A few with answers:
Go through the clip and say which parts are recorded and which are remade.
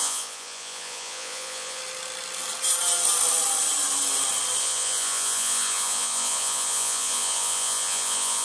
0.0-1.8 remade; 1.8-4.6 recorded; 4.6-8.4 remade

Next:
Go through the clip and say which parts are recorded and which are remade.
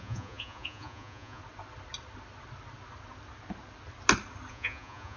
0.0-1.4 remade; 1.4-4.5 recorded; 4.5-5.2 remade